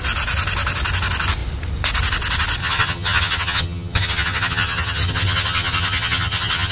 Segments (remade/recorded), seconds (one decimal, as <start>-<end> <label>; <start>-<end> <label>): 0.0-2.6 recorded; 2.6-6.7 remade